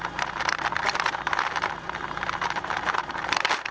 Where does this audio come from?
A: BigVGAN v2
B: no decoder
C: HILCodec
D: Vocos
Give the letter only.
A